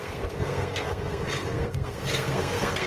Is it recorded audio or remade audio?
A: remade